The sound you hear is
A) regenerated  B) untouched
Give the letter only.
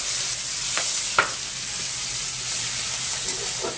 B